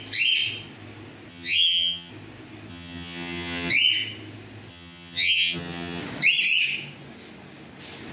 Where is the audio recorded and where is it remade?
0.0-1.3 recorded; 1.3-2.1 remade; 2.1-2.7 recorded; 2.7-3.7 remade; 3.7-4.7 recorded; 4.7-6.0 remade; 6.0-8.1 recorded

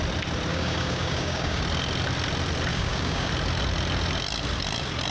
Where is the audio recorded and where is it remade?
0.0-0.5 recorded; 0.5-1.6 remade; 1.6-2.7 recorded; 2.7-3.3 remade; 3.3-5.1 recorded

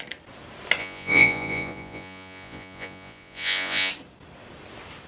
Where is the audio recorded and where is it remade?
0.0-0.8 recorded; 0.8-3.9 remade; 3.9-5.1 recorded

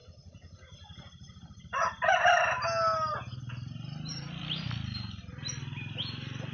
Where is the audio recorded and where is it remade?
0.0-6.5 recorded

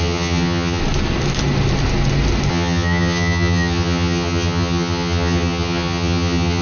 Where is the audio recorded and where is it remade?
0.0-0.8 remade; 0.8-2.5 recorded; 2.5-6.6 remade

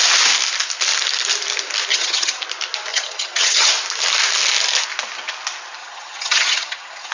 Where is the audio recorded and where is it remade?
0.0-1.9 recorded; 1.9-2.4 remade; 2.4-2.9 recorded; 2.9-3.7 remade; 3.7-5.8 recorded; 5.8-7.1 remade

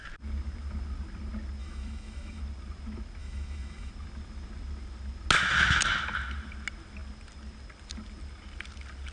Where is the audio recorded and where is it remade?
0.0-1.6 recorded; 1.6-2.4 remade; 2.4-3.2 recorded; 3.2-3.9 remade; 3.9-9.1 recorded

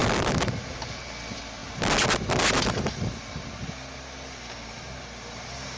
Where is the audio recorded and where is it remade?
0.0-0.8 remade; 0.8-5.8 recorded